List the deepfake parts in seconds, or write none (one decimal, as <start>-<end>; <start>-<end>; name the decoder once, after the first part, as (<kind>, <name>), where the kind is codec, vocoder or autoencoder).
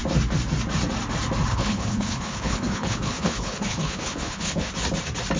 1.5-4.7 (codec, HILCodec)